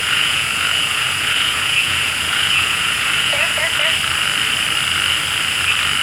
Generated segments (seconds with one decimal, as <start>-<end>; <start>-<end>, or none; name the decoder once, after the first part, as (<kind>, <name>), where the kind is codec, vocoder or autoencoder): 0.0-3.6 (vocoder, Vocos)